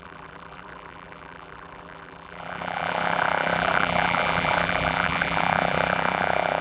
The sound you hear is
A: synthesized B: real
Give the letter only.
A